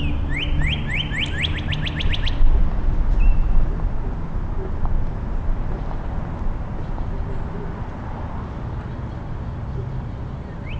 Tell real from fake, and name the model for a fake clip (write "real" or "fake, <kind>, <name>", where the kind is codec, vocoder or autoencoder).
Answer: real